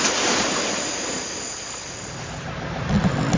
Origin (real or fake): real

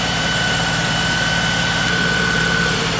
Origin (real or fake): fake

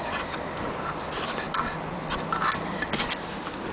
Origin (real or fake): real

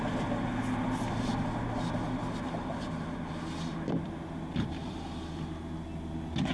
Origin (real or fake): real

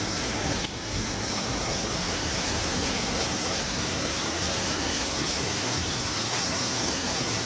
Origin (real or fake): fake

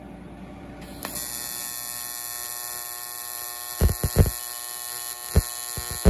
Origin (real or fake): real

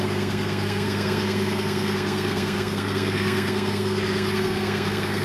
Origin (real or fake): fake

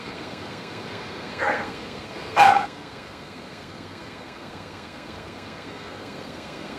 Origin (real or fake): fake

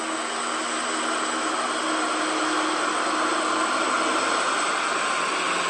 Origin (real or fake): real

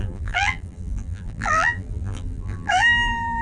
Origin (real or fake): fake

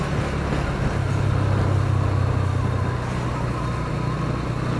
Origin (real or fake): real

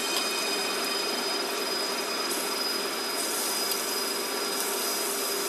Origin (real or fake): real